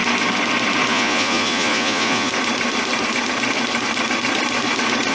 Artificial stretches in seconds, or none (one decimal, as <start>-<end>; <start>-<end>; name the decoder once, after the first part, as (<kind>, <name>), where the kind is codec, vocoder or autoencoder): 0.9-2.3 (vocoder, Vocos)

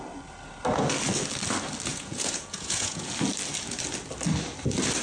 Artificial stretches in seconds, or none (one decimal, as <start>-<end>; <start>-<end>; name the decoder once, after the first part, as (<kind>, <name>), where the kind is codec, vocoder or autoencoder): 1.9-3.1 (vocoder, Vocos)

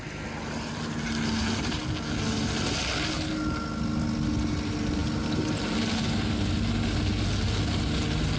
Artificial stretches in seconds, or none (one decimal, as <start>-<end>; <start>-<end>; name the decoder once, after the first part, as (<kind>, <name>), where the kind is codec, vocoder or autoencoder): none

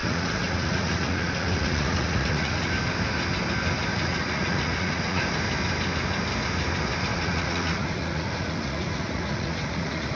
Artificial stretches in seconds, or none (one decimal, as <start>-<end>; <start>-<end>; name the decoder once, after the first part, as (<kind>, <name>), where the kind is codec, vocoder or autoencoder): 0.0-2.7 (vocoder, Vocos); 3.9-5.2; 7.1-10.2

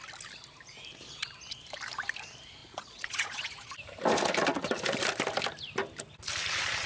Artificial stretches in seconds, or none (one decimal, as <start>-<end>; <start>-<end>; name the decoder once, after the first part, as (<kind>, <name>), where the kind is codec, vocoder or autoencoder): 2.6-3.7 (vocoder, Vocos)

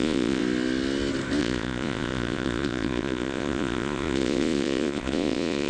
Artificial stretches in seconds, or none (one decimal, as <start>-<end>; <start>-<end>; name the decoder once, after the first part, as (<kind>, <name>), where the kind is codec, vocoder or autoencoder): 0.0-0.4 (vocoder, Vocos); 1.4-5.7

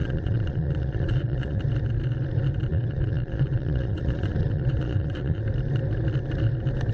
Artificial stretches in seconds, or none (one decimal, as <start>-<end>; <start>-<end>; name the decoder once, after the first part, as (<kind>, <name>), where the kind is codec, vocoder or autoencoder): 0.0-1.6 (vocoder, Vocos); 2.7-5.4

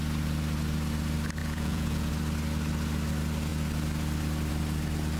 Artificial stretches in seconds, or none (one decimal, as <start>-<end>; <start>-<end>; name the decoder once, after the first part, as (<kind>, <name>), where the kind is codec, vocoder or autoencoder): 1.4-2.1 (vocoder, Vocos)